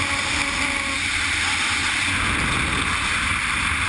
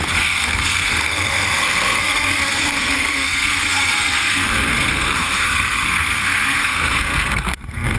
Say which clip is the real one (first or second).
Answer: first